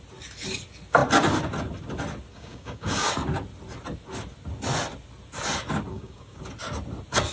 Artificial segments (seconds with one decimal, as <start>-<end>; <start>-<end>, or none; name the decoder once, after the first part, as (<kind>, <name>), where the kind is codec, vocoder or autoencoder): 2.3-3.1 (codec, DAC); 5.9-6.4